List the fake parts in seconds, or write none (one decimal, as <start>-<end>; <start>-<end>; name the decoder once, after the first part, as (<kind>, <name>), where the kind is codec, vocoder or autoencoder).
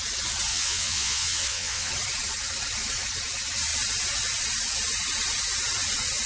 0.5-1.9 (vocoder, WaveNeXt)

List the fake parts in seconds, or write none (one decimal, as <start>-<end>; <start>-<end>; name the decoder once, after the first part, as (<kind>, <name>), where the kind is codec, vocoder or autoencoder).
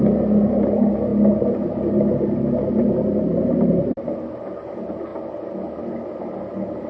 none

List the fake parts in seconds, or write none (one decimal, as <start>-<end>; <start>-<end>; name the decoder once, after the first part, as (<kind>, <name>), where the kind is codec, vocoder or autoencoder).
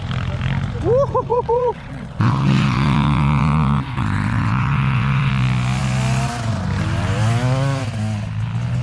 1.3-5.3 (vocoder, WaveNeXt)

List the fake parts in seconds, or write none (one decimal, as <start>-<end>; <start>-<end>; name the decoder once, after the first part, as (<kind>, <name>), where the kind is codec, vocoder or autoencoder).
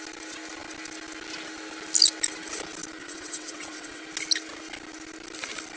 3.0-4.0 (vocoder, WaveNeXt)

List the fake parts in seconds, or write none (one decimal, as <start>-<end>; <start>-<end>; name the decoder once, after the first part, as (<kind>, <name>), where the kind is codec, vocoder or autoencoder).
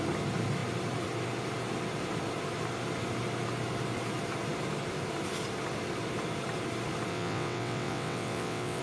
7.1-8.8 (vocoder, WaveNeXt)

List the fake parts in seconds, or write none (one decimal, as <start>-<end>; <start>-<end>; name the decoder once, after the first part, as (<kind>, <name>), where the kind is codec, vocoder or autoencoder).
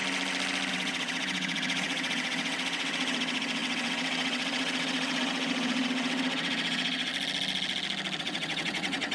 0.7-7.1 (vocoder, WaveNeXt); 8.2-9.1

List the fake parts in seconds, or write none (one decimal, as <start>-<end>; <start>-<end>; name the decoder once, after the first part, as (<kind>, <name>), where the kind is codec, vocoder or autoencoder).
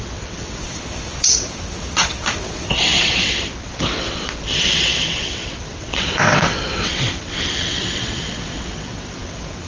0.0-9.7 (vocoder, WaveNeXt)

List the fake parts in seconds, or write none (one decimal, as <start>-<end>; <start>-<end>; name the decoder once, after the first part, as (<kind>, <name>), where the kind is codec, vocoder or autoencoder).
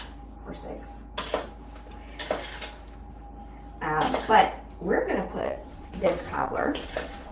5.4-7.3 (vocoder, WaveNeXt)